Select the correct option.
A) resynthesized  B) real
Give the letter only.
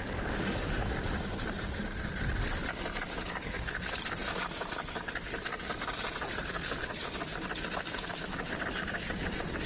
B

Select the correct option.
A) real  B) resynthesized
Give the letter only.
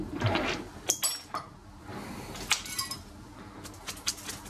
A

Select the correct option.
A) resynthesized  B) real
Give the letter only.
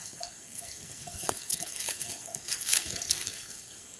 A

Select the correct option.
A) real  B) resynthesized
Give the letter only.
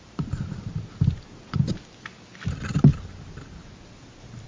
A